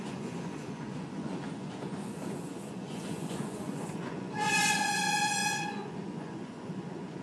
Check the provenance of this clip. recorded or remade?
remade